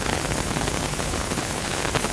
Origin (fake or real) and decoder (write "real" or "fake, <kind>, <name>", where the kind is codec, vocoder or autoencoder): fake, codec, HILCodec